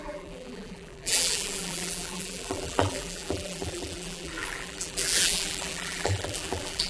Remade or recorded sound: remade